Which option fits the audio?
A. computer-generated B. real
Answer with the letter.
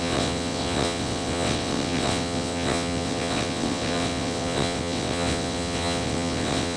A